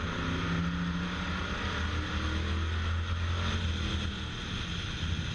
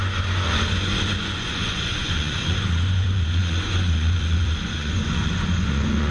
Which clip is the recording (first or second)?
first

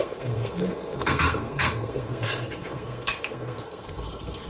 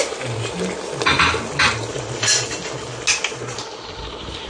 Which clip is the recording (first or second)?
second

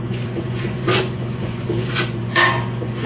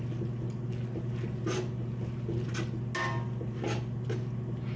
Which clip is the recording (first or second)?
second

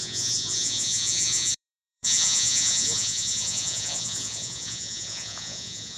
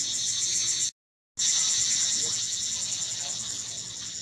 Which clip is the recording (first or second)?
second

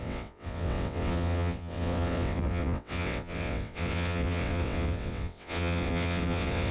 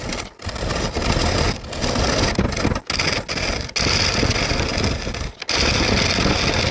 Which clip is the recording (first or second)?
second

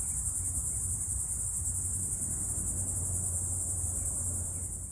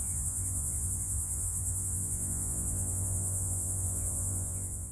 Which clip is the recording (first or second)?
first